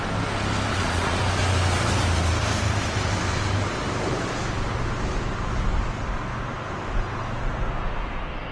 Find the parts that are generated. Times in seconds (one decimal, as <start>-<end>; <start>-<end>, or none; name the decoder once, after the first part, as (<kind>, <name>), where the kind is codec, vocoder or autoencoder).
0.7-1.2 (vocoder, Vocos)